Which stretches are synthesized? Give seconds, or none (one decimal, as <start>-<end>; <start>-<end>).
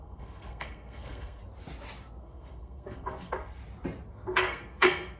0.0-1.4; 2.2-3.6; 4.1-5.2